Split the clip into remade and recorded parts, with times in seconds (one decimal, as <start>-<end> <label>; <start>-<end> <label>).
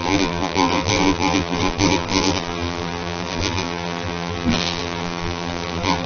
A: 0.0-6.1 remade